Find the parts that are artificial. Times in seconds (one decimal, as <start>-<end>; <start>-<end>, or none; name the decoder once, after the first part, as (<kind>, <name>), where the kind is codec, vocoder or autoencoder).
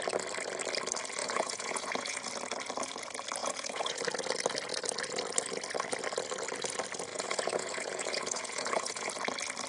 1.2-2.3 (vocoder, Vocos); 3.4-4.0; 7.1-9.1